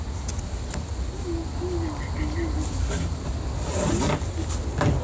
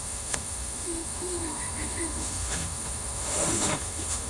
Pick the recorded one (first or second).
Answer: first